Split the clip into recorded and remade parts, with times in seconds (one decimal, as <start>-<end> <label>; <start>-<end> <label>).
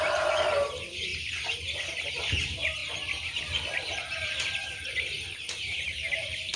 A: 0.0-1.1 remade; 1.1-2.1 recorded; 2.1-2.8 remade; 2.8-3.4 recorded; 3.4-6.6 remade